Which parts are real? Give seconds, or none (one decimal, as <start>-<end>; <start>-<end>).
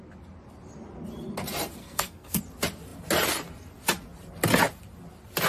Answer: 0.0-1.8; 2.4-5.5